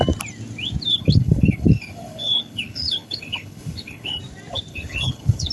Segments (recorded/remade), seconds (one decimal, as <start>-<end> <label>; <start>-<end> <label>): 0.0-0.9 recorded; 0.9-4.2 remade; 4.2-4.7 recorded; 4.7-5.5 remade